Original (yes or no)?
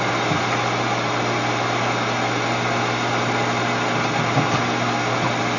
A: yes